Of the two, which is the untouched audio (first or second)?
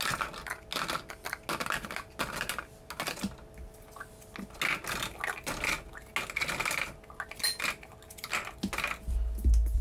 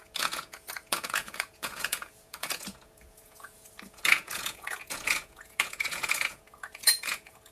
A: first